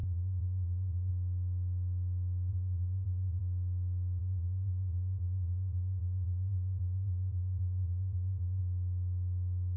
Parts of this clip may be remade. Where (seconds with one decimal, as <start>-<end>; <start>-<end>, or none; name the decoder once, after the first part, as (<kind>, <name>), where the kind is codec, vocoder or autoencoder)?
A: 0.0-1.1 (vocoder, Vocos); 2.5-3.4; 4.2-8.6